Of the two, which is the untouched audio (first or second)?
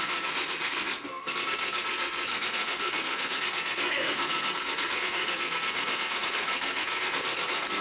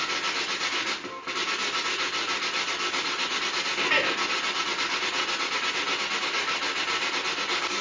second